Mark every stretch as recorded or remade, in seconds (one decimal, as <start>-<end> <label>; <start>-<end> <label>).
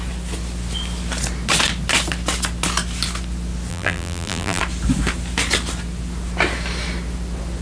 0.0-3.7 recorded; 3.7-4.6 remade; 4.6-7.6 recorded